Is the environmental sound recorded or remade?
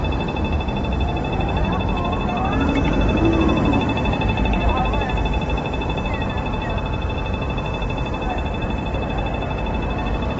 remade